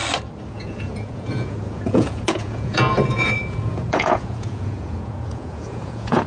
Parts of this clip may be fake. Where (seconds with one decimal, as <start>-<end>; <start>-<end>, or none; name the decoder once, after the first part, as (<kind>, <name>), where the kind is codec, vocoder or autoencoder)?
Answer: 0.5-6.3 (vocoder, Vocos)